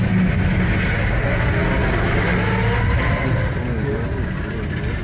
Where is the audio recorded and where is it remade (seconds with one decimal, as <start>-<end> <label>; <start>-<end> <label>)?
0.0-5.0 recorded